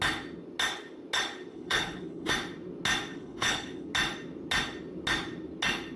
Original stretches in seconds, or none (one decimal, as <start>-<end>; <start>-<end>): 0.0-1.5; 2.3-3.1; 3.9-6.0